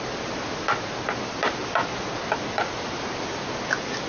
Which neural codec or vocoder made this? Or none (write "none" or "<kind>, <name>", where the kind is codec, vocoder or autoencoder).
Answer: vocoder, BigVGAN v2